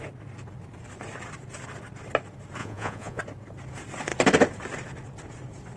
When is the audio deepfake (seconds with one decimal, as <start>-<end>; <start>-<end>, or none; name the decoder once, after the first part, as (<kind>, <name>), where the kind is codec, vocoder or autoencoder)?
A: 2.6-3.2 (vocoder, Vocos)